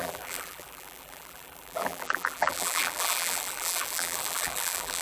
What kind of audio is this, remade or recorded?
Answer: remade